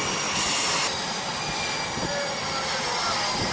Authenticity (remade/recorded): recorded